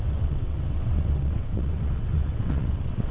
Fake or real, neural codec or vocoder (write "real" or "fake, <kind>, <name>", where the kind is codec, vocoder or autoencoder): fake, vocoder, WaveNeXt